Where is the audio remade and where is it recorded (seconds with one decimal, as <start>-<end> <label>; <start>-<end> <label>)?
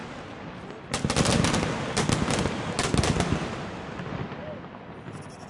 0.0-5.5 recorded